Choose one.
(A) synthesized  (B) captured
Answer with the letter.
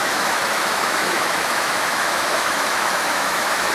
A